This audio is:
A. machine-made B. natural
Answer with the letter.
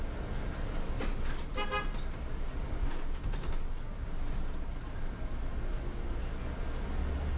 B